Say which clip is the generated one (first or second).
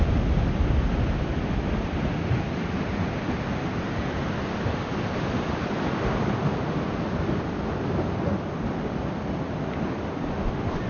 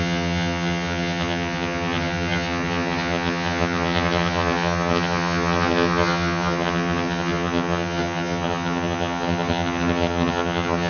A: second